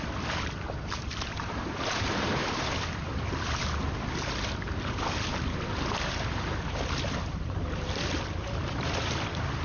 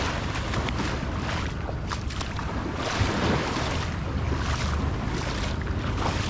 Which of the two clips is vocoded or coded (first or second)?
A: first